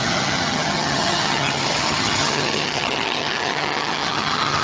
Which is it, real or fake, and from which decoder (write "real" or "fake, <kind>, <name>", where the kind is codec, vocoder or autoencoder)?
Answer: fake, vocoder, HiFi-GAN